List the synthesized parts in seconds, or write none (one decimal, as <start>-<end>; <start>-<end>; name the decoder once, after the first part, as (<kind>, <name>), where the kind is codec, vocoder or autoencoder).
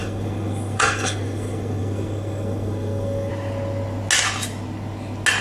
0.0-3.3 (codec, SNAC)